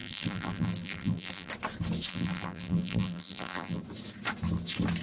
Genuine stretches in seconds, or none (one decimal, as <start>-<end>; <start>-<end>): 1.5-2.1; 3.8-5.0